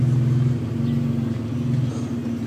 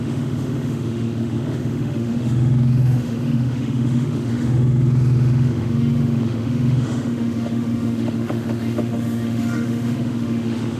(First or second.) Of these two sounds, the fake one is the second